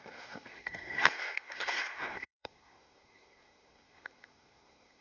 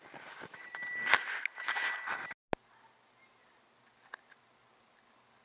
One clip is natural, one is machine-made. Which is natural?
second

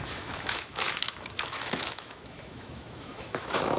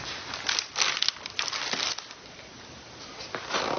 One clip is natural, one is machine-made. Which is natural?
second